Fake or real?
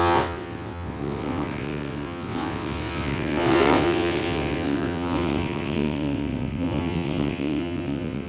fake